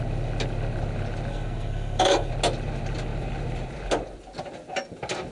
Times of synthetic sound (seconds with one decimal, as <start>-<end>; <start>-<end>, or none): 1.3-2.3